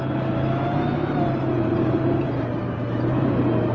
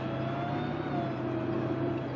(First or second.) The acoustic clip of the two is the second